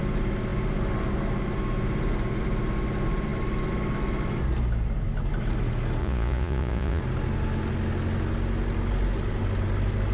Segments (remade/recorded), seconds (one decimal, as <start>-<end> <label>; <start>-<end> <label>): 0.0-6.0 recorded; 6.0-7.0 remade; 7.0-10.1 recorded